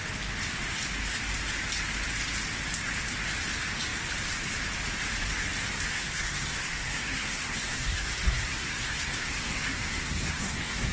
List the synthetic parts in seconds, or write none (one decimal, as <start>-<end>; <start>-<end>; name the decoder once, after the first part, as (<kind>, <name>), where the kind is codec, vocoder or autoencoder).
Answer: 5.9-10.9 (codec, SNAC)